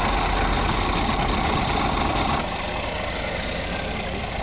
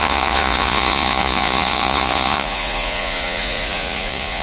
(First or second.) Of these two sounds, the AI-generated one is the second